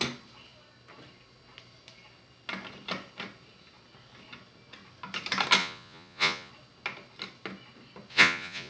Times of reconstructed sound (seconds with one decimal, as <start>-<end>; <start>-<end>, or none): 5.6-6.5; 8.1-8.7